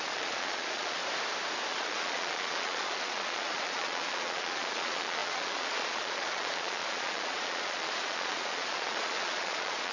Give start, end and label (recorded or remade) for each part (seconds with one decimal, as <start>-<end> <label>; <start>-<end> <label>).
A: 0.0-1.0 remade; 1.0-1.7 recorded; 1.7-9.9 remade